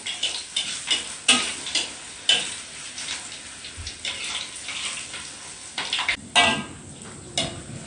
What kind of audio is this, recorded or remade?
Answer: recorded